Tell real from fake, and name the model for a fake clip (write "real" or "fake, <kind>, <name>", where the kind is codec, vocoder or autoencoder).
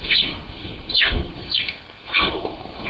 fake, codec, SNAC